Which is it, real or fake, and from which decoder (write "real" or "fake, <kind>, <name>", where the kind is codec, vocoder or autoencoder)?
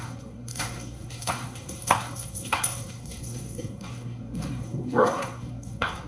fake, codec, SNAC